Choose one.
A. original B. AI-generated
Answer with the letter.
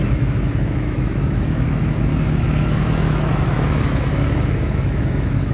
B